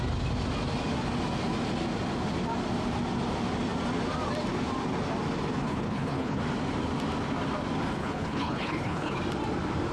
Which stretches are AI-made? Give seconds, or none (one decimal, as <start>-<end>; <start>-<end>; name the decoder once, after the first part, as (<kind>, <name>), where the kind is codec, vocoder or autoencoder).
5.6-6.4 (codec, HILCodec); 8.0-9.2